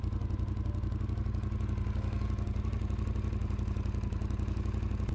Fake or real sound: real